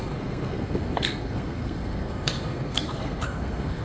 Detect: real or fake fake